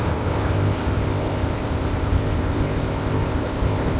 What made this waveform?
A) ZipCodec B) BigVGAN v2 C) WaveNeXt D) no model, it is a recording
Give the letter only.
A